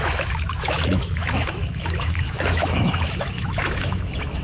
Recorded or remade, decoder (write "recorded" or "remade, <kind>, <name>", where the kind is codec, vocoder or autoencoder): remade, autoencoder, DAC-VAE